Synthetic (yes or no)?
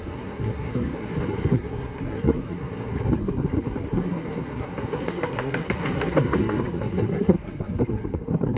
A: yes